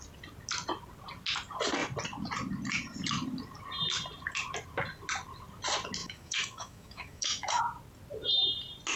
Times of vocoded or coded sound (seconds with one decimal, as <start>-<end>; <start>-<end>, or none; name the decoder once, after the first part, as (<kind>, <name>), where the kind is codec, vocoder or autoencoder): 6.0-7.6 (autoencoder, DAC-VAE)

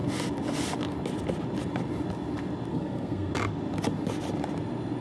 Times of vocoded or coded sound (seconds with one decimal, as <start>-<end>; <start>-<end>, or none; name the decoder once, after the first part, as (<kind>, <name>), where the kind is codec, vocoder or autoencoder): 2.7-3.3 (codec, SNAC)